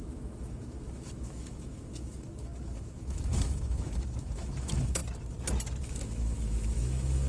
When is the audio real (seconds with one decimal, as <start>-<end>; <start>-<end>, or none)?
5.0-5.8